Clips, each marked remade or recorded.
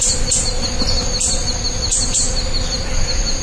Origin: recorded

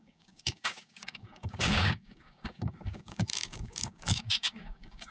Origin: remade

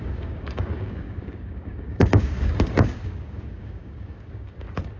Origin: remade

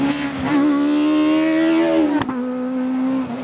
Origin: recorded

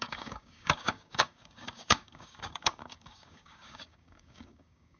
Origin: remade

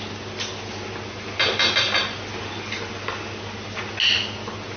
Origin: recorded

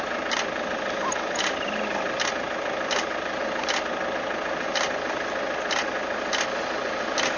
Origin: recorded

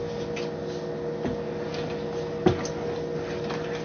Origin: recorded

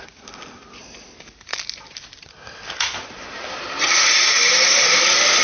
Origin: recorded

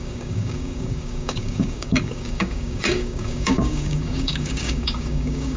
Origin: remade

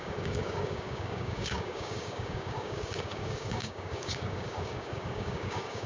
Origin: remade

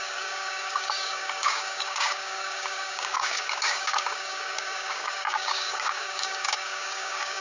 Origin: remade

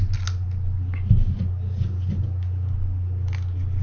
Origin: recorded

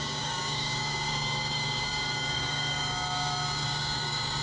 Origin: remade